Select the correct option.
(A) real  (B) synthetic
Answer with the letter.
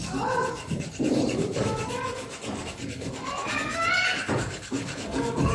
B